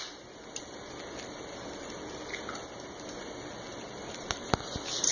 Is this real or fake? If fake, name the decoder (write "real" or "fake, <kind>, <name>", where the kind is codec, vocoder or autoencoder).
real